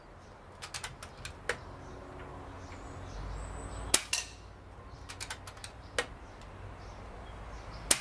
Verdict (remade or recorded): recorded